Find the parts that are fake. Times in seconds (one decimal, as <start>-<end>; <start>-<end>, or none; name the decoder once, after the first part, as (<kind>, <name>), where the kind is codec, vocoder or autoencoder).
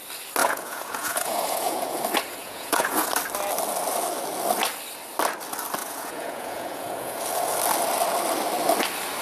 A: 0.4-2.0 (vocoder, Vocos); 2.4-3.1; 5.8-7.2